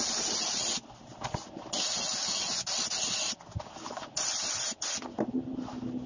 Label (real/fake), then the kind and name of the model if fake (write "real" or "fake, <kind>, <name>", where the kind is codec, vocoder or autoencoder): real